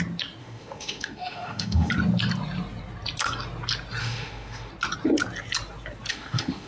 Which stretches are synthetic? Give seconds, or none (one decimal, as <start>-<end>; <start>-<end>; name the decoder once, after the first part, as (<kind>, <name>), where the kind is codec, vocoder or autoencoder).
0.4-1.9 (autoencoder, DAC-VAE); 4.0-4.7; 6.1-6.7